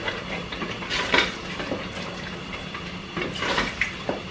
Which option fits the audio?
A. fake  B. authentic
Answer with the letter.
A